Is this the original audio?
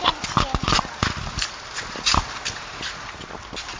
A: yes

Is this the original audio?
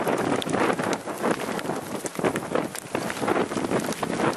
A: yes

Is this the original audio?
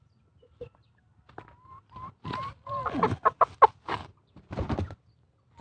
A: yes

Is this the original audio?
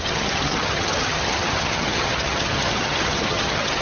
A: no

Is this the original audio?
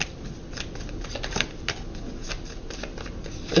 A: yes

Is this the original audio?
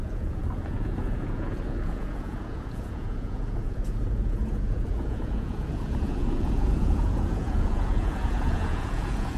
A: no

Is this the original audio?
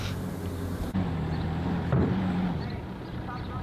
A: yes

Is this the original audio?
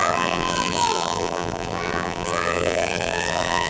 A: no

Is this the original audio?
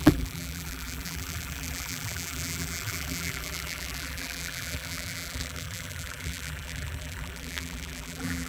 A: no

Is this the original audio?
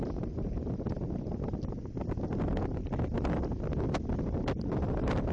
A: yes